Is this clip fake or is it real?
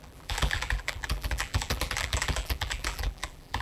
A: fake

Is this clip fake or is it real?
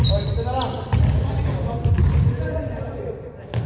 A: real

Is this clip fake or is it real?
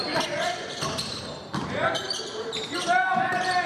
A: fake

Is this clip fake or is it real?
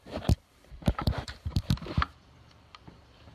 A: fake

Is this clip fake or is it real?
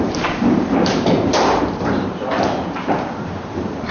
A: fake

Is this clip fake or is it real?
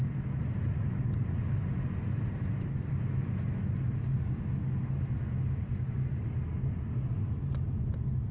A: real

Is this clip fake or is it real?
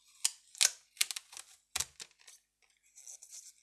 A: real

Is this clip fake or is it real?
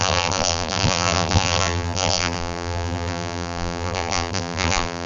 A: fake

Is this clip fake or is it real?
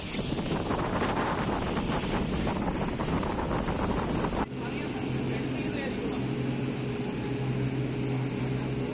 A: real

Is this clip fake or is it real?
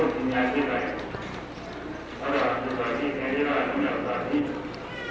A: real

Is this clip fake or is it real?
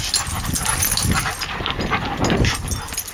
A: real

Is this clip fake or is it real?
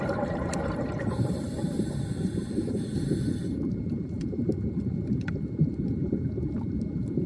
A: fake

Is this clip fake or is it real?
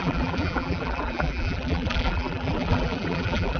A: fake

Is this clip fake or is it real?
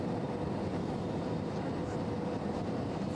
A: fake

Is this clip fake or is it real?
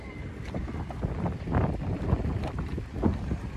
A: real